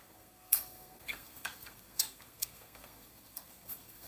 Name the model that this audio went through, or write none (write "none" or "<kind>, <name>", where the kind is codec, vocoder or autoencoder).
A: codec, SNAC